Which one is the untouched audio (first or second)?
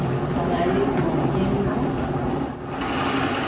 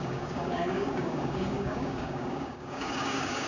first